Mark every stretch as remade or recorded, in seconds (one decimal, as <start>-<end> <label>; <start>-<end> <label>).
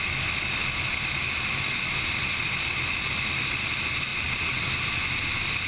0.0-5.7 recorded